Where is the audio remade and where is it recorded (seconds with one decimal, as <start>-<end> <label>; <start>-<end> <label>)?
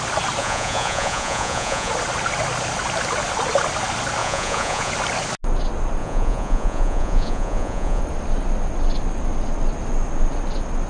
0.0-0.4 recorded; 0.4-1.9 remade; 1.9-4.2 recorded; 4.2-4.9 remade; 4.9-6.0 recorded; 6.0-8.0 remade; 8.0-10.9 recorded